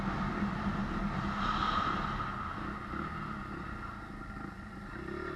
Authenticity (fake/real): real